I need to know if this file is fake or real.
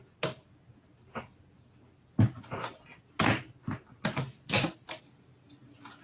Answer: real